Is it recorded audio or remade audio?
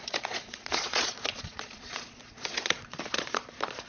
remade